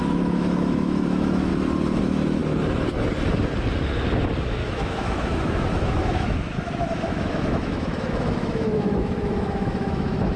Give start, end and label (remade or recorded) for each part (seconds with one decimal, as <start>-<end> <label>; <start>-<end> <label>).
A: 0.0-1.5 remade; 1.5-2.0 recorded; 2.0-2.4 remade; 2.4-4.4 recorded; 4.4-10.4 remade